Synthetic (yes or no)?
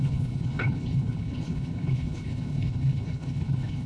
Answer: yes